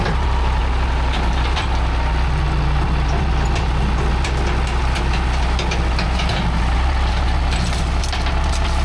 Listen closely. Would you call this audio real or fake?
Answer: real